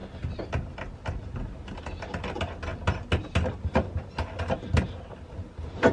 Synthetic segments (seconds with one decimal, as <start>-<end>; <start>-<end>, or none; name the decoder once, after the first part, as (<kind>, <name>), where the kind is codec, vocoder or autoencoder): none